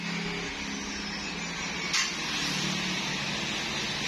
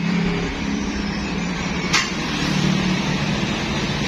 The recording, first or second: first